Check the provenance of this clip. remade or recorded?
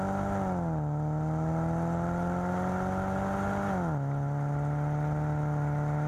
recorded